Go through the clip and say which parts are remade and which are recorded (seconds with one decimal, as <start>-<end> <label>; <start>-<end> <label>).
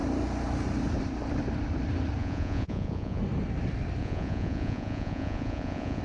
0.0-2.2 recorded; 2.2-3.2 remade; 3.2-4.0 recorded; 4.0-6.0 remade